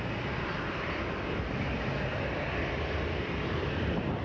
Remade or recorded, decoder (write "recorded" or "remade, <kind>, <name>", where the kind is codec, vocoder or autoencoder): recorded